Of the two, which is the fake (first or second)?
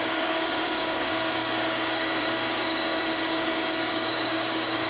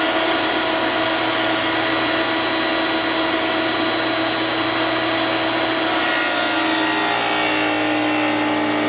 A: first